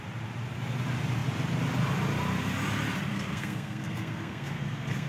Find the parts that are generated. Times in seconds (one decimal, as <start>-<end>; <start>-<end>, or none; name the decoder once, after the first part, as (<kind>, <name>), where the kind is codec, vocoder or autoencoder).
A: 3.1-5.1 (codec, SNAC)